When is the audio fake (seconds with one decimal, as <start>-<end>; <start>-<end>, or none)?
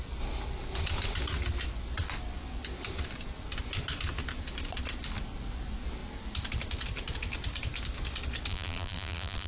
8.5-9.5